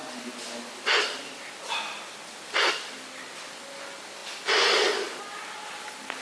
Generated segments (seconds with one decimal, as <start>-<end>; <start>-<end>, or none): none